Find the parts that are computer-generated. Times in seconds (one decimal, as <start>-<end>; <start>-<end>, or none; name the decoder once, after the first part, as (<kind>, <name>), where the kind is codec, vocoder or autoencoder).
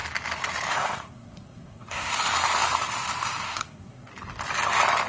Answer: 0.7-2.1 (codec, SNAC); 3.4-4.1